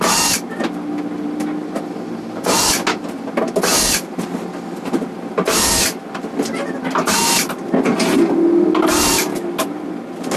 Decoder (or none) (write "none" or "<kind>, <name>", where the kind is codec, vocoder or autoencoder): none